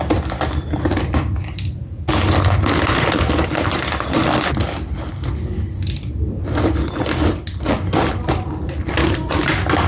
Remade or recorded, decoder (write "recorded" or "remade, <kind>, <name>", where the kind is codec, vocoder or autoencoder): recorded